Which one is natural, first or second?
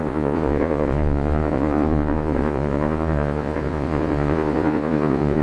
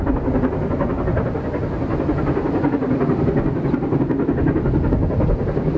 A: second